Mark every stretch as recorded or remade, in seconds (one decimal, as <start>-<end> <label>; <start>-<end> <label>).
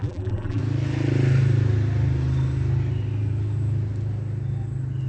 0.0-0.6 remade; 0.6-5.1 recorded